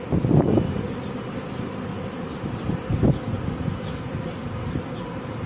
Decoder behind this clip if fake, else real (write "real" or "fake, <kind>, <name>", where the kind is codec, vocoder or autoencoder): real